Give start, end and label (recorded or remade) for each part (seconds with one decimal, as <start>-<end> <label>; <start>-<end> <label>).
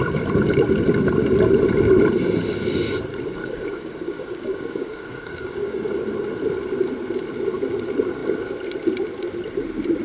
0.0-3.4 recorded; 3.4-6.0 remade; 6.0-10.0 recorded